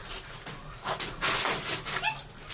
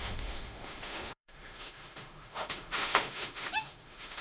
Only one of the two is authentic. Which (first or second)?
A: first